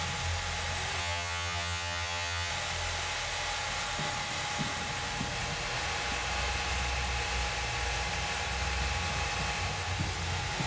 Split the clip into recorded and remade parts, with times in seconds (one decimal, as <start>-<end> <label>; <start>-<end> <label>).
0.0-1.0 recorded; 1.0-2.5 remade; 2.5-10.7 recorded